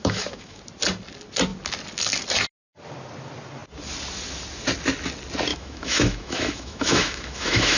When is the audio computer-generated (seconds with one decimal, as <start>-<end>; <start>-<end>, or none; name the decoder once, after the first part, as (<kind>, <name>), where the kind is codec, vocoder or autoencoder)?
0.0-0.6 (autoencoder, DAC-VAE); 5.5-7.8